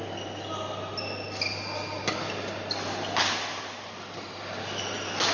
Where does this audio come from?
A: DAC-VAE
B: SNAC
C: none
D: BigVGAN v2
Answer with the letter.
C